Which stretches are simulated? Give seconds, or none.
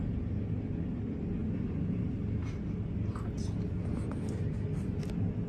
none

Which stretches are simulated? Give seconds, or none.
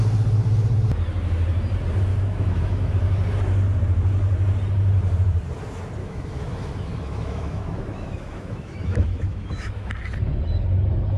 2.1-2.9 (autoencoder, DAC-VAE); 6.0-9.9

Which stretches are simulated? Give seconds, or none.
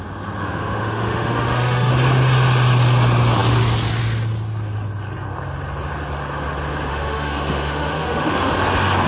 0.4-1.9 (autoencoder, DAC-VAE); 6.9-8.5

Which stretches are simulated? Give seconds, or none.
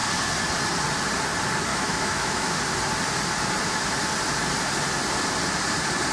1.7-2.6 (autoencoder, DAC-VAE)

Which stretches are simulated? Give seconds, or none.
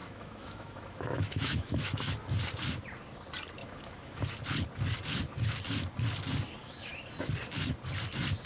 0.0-2.1 (autoencoder, DAC-VAE); 3.6-4.2; 6.6-7.3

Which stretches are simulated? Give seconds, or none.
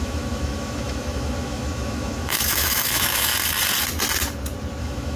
0.0-3.3 (autoencoder, DAC-VAE); 4.8-5.2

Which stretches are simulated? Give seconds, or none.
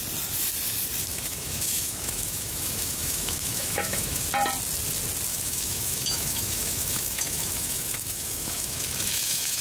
1.1-4.3 (autoencoder, DAC-VAE); 5.3-9.6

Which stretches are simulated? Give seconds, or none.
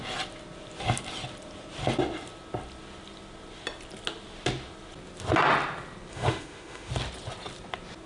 6.1-6.9 (autoencoder, DAC-VAE)